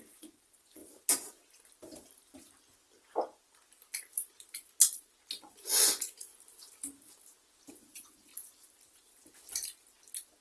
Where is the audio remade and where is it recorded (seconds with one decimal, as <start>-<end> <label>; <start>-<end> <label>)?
0.0-0.8 remade; 0.8-5.4 recorded; 5.4-6.3 remade; 6.3-7.7 recorded; 7.7-8.3 remade; 8.3-10.4 recorded